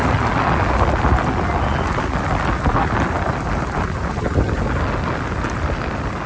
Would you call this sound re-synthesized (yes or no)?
no